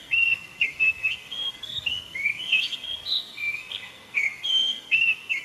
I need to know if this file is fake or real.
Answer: fake